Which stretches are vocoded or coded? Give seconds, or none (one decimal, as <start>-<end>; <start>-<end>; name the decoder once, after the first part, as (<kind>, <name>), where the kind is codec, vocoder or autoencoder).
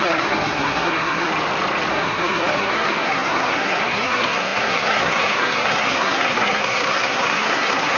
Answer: 0.0-1.3 (codec, SNAC); 1.9-8.0